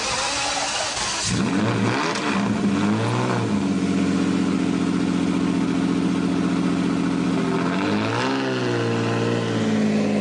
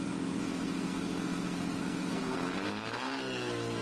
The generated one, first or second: second